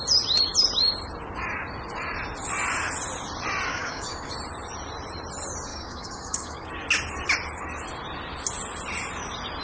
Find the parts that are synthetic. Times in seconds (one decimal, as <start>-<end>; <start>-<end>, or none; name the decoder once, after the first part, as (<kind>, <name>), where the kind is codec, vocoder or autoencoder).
3.7-4.3 (codec, DAC); 5.7-6.7